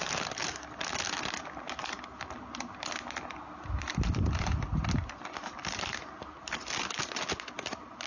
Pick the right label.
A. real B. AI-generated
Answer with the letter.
A